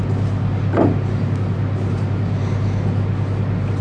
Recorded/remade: recorded